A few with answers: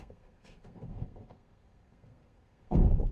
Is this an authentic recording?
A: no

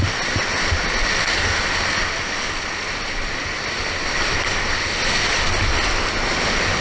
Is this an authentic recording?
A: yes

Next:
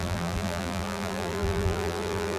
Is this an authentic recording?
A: no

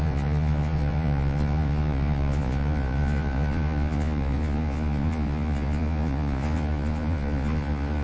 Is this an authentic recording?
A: no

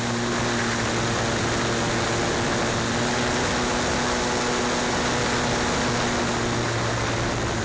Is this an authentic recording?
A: yes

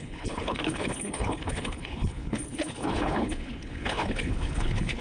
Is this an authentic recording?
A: no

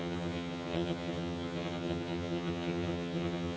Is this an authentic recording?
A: no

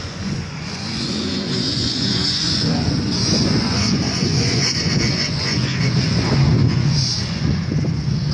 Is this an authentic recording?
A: no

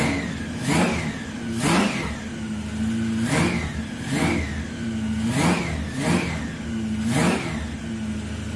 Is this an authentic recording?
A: yes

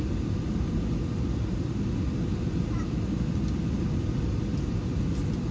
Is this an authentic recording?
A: yes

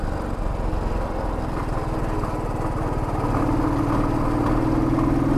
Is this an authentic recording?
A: yes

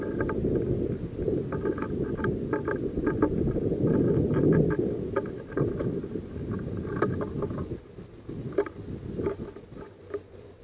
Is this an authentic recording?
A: yes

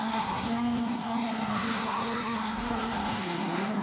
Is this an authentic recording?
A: no